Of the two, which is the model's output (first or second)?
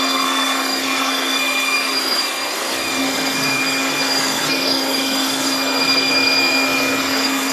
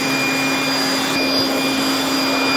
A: first